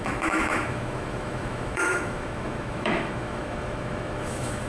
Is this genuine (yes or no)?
no